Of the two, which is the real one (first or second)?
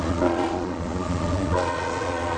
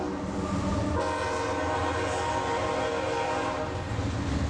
second